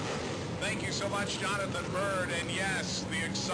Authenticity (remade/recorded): recorded